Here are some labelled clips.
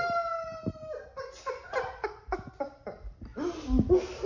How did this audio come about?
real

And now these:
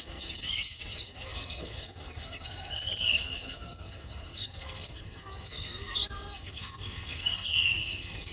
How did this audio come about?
fake